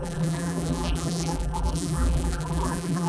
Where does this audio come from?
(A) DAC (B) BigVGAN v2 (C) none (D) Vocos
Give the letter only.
B